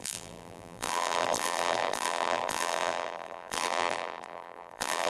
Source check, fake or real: fake